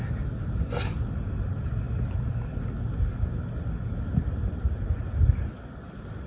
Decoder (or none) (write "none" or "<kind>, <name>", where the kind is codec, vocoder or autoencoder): none